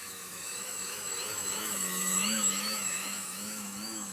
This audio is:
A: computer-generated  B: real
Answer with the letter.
A